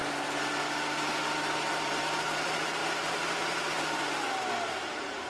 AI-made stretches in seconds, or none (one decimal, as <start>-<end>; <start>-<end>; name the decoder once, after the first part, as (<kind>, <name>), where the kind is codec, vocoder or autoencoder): 1.7-5.3 (vocoder, BigVGAN v2)